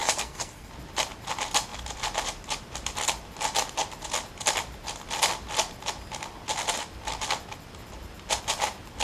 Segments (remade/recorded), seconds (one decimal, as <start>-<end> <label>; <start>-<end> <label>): 0.0-0.7 remade; 0.7-9.0 recorded